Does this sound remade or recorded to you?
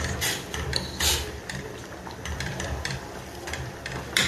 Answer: remade